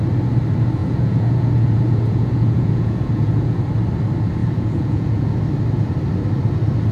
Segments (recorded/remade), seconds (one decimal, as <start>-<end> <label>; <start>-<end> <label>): 0.0-0.8 recorded; 0.8-3.6 remade; 3.6-4.4 recorded; 4.4-5.3 remade; 5.3-6.9 recorded